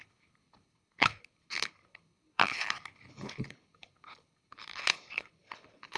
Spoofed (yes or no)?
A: yes